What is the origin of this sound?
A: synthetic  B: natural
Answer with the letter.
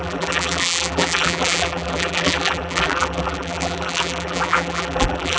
A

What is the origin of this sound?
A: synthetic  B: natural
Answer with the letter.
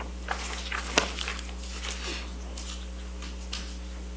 B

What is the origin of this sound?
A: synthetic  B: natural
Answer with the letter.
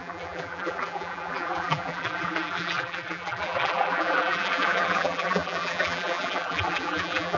A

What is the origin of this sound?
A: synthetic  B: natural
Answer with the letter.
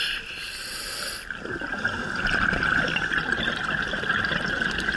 B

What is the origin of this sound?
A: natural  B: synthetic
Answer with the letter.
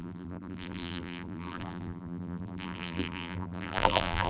B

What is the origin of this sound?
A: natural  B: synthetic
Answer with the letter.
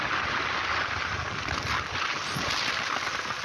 A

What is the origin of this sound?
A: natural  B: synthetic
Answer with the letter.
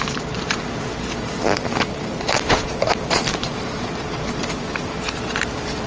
B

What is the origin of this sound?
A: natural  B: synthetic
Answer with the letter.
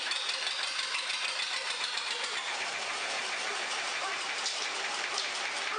B